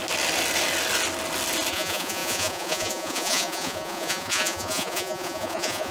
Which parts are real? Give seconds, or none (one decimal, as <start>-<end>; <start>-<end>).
0.0-1.7